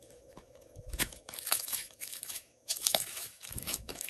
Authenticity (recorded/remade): remade